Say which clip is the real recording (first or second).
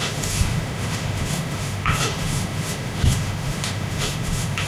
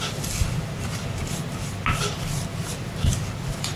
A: second